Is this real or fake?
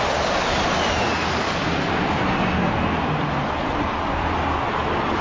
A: real